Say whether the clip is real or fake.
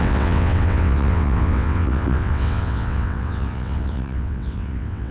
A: fake